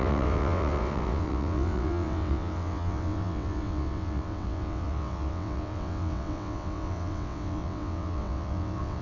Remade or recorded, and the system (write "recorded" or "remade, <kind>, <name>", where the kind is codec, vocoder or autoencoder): remade, vocoder, WaveNeXt